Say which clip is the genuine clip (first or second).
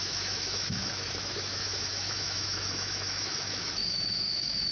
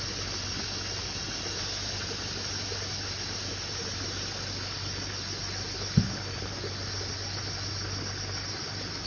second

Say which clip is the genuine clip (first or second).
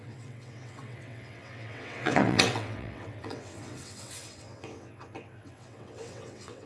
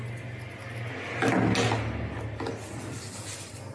second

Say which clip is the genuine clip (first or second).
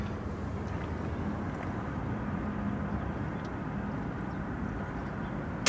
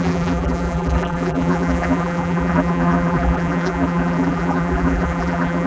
first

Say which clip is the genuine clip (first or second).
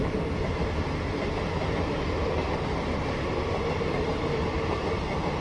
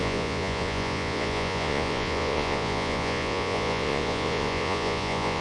first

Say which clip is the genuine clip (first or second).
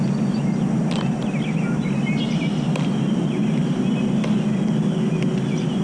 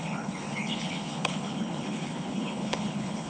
first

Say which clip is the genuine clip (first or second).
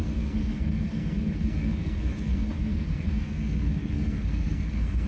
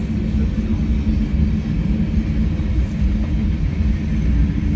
second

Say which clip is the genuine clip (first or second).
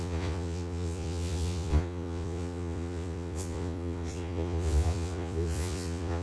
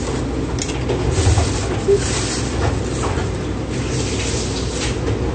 second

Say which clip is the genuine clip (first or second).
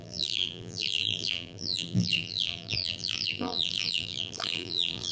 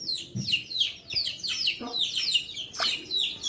second